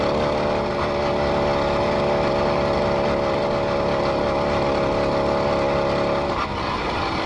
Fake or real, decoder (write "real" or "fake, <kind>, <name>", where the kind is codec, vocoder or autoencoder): real